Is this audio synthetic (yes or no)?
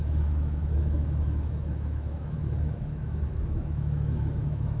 yes